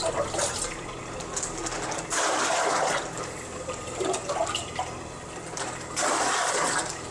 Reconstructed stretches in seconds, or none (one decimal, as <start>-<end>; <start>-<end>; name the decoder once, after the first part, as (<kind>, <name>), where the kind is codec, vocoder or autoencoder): none